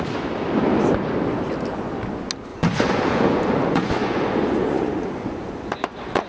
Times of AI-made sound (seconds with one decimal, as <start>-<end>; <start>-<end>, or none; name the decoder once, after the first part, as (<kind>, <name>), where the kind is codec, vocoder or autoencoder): 2.5-6.3 (vocoder, Vocos)